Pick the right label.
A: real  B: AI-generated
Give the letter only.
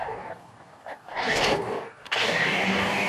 B